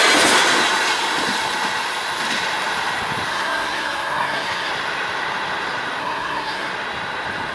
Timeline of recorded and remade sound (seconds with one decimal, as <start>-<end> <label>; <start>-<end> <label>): 0.0-3.3 recorded; 3.3-4.7 remade; 4.7-6.0 recorded; 6.0-6.7 remade; 6.7-7.5 recorded